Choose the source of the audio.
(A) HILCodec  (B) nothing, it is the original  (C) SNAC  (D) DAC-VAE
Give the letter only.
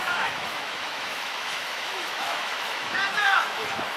D